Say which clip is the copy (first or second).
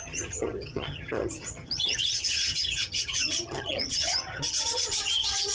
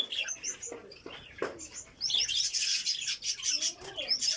first